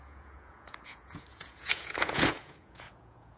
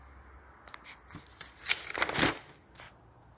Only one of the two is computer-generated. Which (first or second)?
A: first